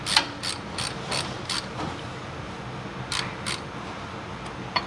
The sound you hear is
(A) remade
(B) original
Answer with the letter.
B